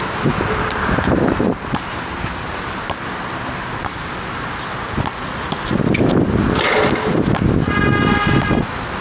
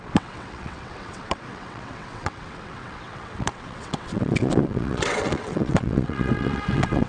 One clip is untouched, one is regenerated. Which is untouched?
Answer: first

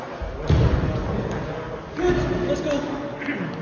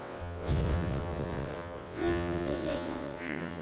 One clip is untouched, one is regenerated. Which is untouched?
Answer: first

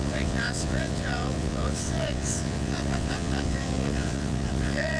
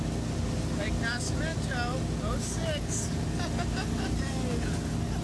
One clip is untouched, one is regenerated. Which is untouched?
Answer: second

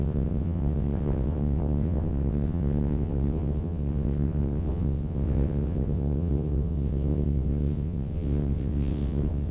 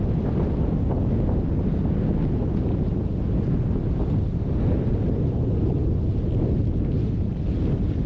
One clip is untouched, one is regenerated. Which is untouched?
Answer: second